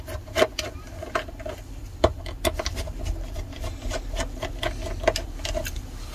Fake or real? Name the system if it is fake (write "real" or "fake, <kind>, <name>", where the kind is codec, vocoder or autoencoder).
fake, vocoder, BigVGAN v2